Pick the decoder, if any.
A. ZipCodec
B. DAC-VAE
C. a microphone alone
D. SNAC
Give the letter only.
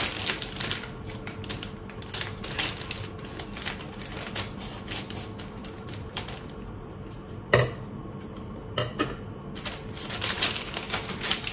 C